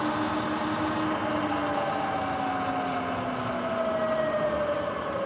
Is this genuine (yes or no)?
yes